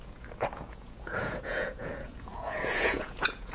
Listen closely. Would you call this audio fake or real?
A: fake